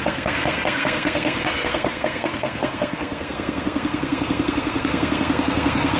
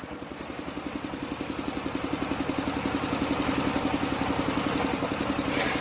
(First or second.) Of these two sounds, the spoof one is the first